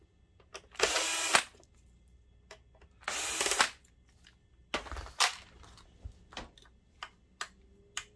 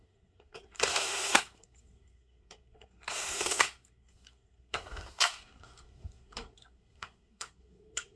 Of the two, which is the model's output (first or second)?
second